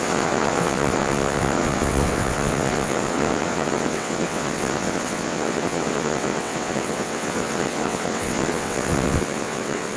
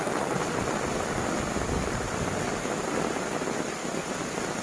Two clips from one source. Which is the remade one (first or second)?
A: first